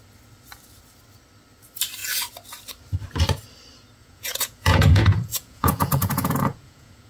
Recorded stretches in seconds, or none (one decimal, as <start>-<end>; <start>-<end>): 0.0-4.0